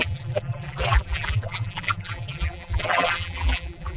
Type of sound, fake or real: fake